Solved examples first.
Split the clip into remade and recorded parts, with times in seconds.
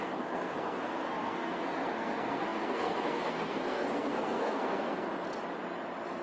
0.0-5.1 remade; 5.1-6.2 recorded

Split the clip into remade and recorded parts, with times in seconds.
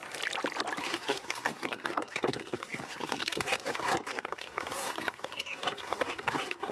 0.0-0.8 recorded; 0.8-6.7 remade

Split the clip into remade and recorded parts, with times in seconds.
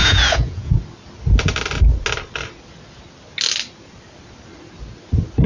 0.0-0.8 remade; 0.8-5.5 recorded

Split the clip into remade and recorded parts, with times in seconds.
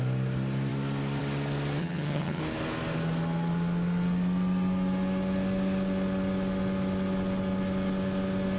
0.0-1.8 recorded; 1.8-2.4 remade; 2.4-8.6 recorded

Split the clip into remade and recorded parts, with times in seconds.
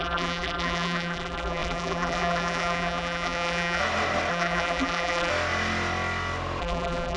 0.0-3.8 remade; 3.8-4.3 recorded; 4.3-5.3 remade; 5.3-6.6 recorded; 6.6-7.2 remade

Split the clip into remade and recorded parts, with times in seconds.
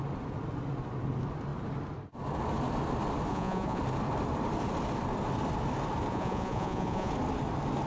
0.0-3.3 recorded; 3.3-3.8 remade; 3.8-6.1 recorded; 6.1-7.1 remade; 7.1-7.9 recorded